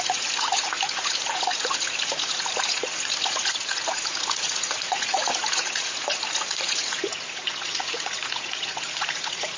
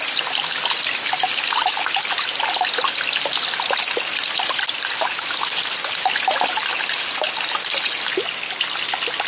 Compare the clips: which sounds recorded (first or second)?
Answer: second